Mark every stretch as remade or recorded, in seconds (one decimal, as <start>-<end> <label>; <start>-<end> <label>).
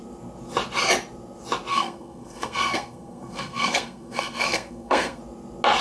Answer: 0.0-1.7 recorded; 1.7-5.2 remade; 5.2-5.8 recorded